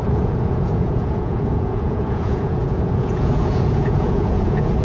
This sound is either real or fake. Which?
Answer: fake